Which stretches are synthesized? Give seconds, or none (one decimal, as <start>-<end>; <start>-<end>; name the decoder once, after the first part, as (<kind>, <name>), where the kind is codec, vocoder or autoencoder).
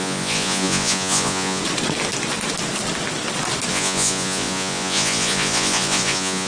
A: 0.0-1.6 (vocoder, Vocos); 3.7-6.5